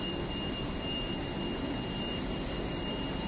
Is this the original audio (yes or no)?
no